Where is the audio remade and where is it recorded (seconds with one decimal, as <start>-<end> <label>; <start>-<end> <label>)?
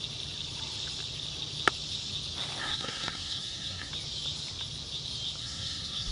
0.0-2.6 recorded; 2.6-3.9 remade; 3.9-5.4 recorded; 5.4-6.1 remade